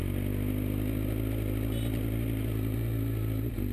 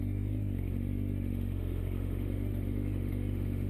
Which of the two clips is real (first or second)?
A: first